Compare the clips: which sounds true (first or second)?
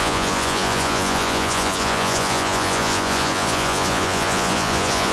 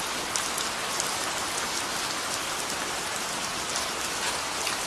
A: second